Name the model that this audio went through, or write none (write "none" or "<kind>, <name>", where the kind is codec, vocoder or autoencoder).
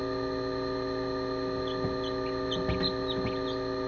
none